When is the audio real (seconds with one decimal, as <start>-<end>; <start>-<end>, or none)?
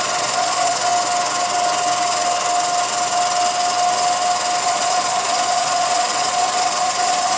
0.9-4.6